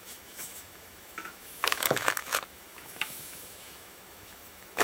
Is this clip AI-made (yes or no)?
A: yes